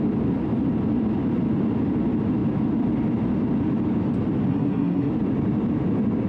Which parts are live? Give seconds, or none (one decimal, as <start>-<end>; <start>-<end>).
0.0-4.5; 5.1-6.3

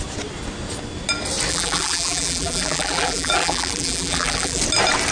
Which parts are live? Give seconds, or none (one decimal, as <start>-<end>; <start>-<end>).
0.0-1.5; 4.6-5.1

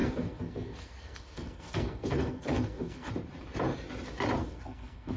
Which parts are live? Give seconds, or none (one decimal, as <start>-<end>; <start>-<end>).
3.1-4.4